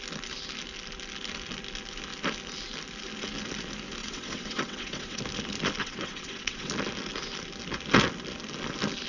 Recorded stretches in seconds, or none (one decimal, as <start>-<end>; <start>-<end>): 0.0-4.0; 5.2-5.8; 6.7-9.1